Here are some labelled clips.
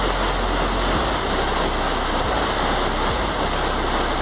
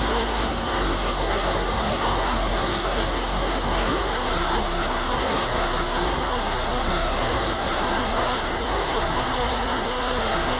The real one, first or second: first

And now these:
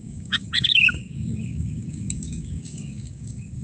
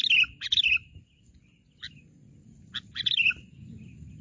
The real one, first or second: second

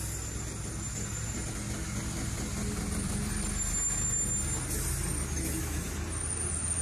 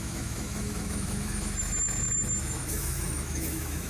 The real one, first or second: first